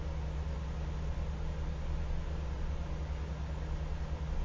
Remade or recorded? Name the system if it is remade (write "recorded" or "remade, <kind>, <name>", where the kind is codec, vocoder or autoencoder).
recorded